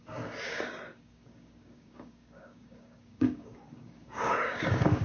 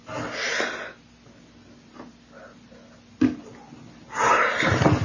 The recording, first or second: second